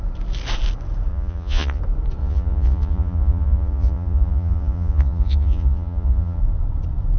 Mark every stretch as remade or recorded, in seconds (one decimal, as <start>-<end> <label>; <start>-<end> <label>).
0.0-1.1 recorded; 1.1-1.8 remade; 1.8-2.2 recorded; 2.2-6.4 remade; 6.4-7.2 recorded